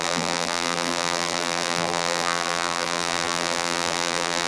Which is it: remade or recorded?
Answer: remade